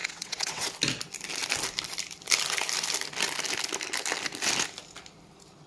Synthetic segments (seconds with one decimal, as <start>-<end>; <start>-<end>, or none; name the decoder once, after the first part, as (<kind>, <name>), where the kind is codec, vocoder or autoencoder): 0.0-0.7 (vocoder, WaveNeXt)